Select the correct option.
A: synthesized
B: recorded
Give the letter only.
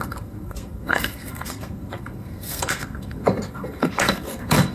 A